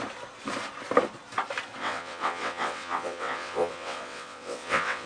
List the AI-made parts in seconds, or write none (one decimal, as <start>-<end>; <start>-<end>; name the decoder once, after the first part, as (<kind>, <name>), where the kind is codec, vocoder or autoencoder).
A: 1.8-5.1 (vocoder, WaveNeXt)